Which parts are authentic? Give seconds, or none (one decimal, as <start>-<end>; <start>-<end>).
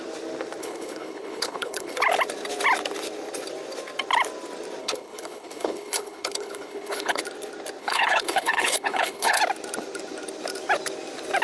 0.0-0.6; 2.0-4.8; 7.2-7.8; 9.4-11.4